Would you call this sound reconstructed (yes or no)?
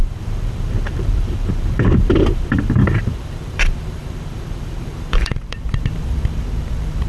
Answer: yes